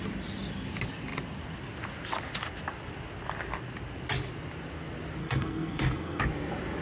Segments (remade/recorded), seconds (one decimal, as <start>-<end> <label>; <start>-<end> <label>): 0.0-5.2 recorded; 5.2-6.2 remade; 6.2-6.8 recorded